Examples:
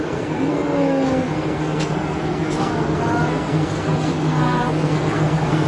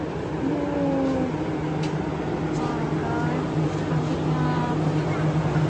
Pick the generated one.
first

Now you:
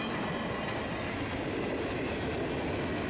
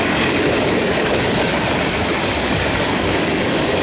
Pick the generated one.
second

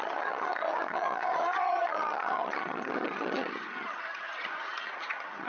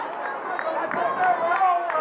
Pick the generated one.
first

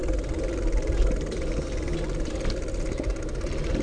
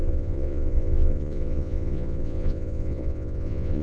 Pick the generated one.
second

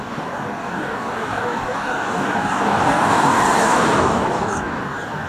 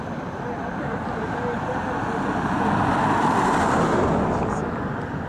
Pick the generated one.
first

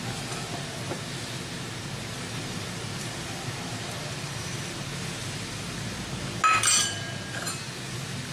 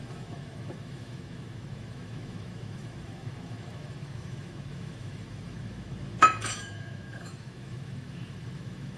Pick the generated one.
second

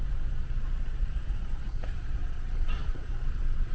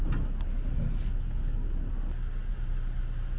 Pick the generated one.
first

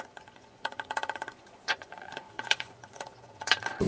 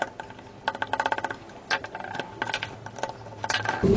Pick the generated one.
first